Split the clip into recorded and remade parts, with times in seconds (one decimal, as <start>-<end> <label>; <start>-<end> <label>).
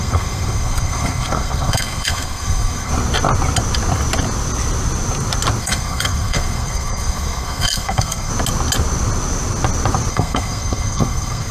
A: 0.0-2.9 remade; 2.9-5.6 recorded; 5.6-8.3 remade; 8.3-10.1 recorded; 10.1-11.5 remade